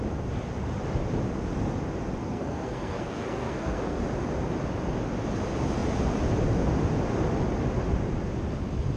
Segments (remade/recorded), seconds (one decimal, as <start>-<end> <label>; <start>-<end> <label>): 0.0-2.2 recorded; 2.2-4.0 remade; 4.0-9.0 recorded